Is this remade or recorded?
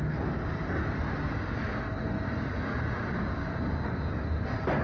recorded